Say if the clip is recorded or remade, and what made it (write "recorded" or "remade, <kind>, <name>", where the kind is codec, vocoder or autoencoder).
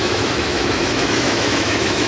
remade, autoencoder, DAC-VAE